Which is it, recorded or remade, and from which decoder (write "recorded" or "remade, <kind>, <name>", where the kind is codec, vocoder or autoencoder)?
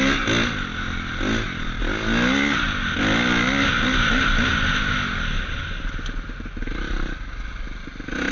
recorded